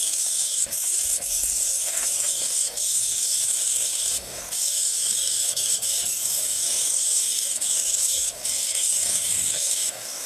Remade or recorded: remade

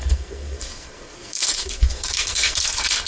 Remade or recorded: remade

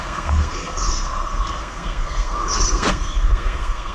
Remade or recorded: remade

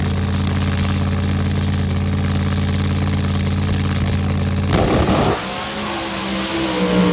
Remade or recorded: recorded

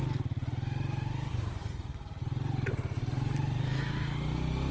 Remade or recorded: recorded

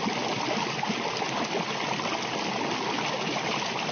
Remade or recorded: recorded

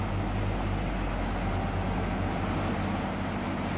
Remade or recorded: recorded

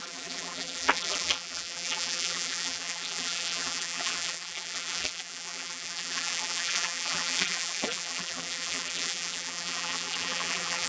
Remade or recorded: remade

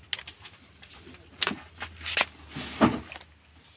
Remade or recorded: recorded